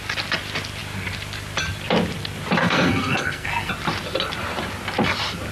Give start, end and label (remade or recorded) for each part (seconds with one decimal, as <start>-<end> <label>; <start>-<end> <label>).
0.0-2.6 recorded; 2.6-3.7 remade; 3.7-5.5 recorded